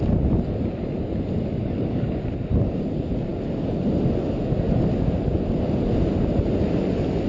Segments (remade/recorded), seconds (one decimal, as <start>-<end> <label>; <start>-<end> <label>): 0.0-1.6 recorded; 1.6-2.2 remade; 2.2-7.3 recorded